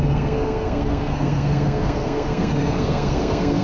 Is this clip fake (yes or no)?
yes